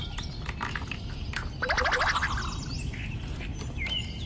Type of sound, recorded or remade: recorded